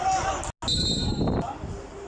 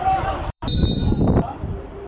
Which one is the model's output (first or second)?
second